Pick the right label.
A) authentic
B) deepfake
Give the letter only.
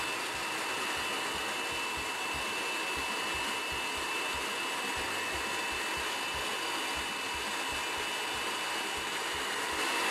A